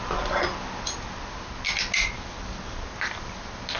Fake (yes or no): no